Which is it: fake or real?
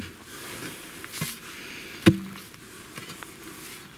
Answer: real